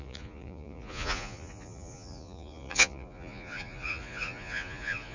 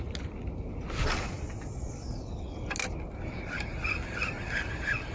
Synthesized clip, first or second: first